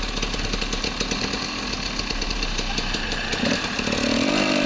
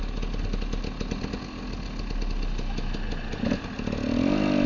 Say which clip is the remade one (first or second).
first